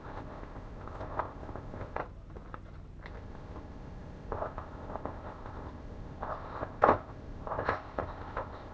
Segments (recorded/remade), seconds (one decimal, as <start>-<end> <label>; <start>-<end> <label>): 0.0-2.0 remade; 2.0-3.1 recorded; 3.1-8.7 remade